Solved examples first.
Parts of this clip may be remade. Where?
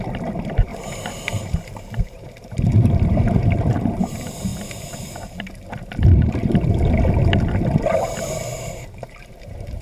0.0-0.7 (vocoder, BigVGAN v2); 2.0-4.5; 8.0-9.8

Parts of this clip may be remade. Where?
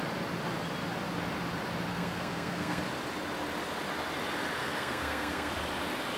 1.9-2.8 (codec, SNAC); 4.6-5.5